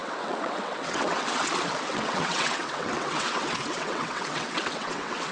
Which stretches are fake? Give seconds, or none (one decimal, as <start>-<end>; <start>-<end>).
0.0-1.5; 1.9-5.3